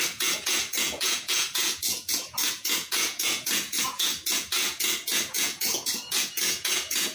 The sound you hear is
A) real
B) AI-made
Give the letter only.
B